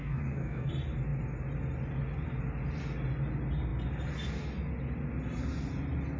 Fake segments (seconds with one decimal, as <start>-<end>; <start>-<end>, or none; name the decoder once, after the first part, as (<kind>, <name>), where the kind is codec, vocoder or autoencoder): 0.0-0.7 (codec, DAC)